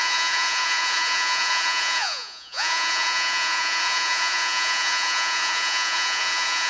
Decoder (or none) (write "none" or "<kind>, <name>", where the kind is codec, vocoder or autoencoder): vocoder, Vocos